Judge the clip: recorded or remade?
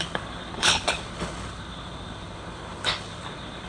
remade